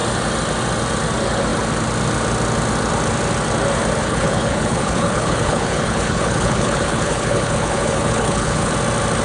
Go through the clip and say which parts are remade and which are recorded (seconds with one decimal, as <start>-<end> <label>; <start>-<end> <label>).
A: 0.0-4.0 recorded; 4.0-8.7 remade; 8.7-9.2 recorded